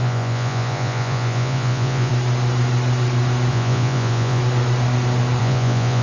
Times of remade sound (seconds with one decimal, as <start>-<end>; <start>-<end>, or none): 0.0-2.1; 3.5-4.4; 5.4-6.0